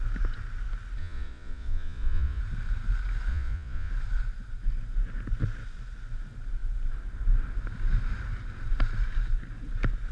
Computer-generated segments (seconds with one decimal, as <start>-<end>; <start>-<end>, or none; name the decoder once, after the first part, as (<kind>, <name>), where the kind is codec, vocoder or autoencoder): 1.0-2.4 (vocoder, Vocos); 3.3-3.9